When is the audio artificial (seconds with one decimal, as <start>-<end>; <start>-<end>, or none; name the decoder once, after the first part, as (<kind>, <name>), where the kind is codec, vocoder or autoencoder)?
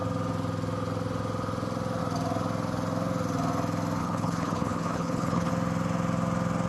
4.0-5.5 (codec, HILCodec)